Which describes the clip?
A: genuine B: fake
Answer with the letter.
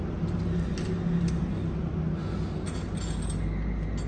A